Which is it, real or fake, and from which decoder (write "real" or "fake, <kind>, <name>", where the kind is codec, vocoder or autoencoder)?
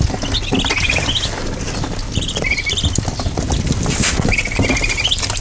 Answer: real